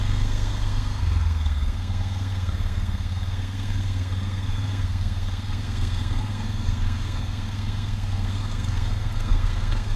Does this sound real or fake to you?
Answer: fake